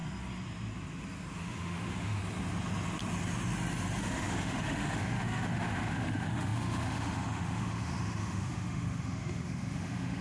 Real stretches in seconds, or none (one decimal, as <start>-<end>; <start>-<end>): 0.0-1.3; 2.2-4.0